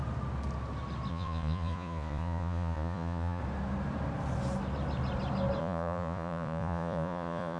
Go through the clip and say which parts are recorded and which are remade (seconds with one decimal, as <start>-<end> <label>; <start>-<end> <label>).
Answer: 0.0-1.1 recorded; 1.1-3.4 remade; 3.4-5.6 recorded; 5.6-7.6 remade